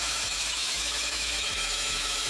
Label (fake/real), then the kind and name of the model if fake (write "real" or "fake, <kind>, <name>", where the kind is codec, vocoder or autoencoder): fake, autoencoder, DAC-VAE